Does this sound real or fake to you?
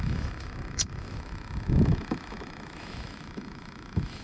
fake